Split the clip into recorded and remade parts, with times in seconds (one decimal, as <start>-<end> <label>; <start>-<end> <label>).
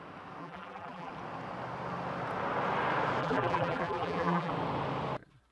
0.0-0.4 recorded; 0.4-1.1 remade; 1.1-3.2 recorded; 3.2-4.5 remade; 4.5-5.5 recorded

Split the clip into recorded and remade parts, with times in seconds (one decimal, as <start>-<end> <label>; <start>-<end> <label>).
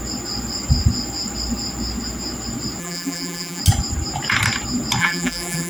0.0-2.8 recorded; 2.8-3.6 remade; 3.6-5.0 recorded; 5.0-5.7 remade